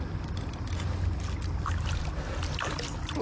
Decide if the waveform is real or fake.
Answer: real